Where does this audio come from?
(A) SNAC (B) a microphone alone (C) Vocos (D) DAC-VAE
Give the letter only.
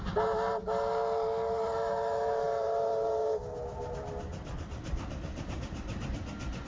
B